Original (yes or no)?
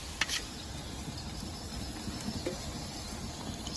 yes